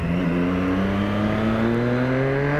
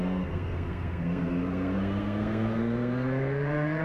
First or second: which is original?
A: first